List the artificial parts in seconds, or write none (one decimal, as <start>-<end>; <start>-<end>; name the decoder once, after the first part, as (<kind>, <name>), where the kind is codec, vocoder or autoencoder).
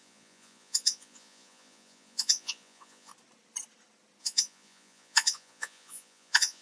0.0-3.1 (vocoder, Vocos); 4.2-6.6